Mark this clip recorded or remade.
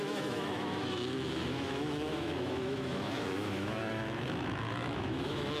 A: remade